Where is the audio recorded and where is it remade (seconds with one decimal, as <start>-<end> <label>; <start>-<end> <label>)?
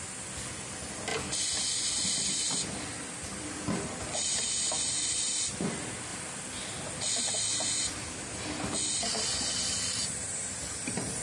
0.0-11.2 recorded